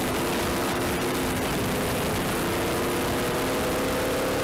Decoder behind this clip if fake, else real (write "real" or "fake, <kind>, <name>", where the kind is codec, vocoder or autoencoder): real